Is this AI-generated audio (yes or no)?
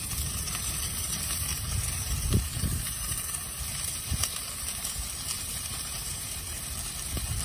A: yes